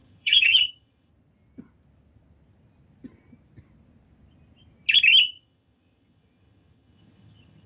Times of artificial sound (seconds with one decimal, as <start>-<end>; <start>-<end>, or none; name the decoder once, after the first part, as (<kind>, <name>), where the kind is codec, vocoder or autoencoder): 0.0-1.1 (vocoder, HiFi-GAN); 5.2-7.7